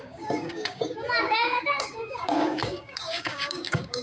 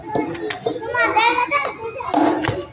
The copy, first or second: first